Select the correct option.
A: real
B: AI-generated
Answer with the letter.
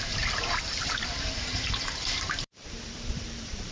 B